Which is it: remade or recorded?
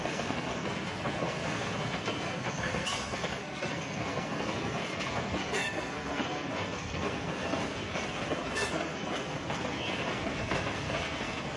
remade